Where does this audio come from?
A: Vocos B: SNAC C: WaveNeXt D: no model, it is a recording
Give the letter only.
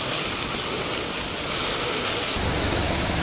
D